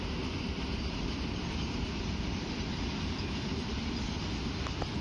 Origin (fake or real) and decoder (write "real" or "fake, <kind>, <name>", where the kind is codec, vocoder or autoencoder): real